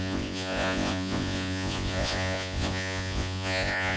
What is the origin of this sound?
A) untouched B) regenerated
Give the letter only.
B